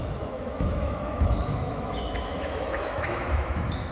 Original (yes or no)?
no